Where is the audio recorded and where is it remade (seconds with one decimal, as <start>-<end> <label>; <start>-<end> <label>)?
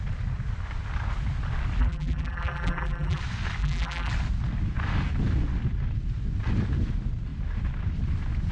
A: 0.0-1.8 recorded; 1.8-3.2 remade; 3.2-3.6 recorded; 3.6-4.1 remade; 4.1-8.5 recorded